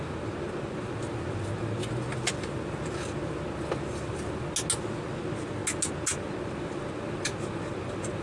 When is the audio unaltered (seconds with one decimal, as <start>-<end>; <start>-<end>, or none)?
0.0-8.2